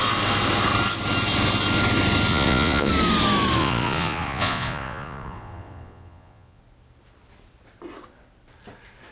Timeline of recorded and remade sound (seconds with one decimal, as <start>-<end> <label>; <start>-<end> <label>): 0.0-2.3 recorded; 2.3-2.9 remade; 2.9-3.6 recorded; 3.6-6.6 remade; 6.6-9.1 recorded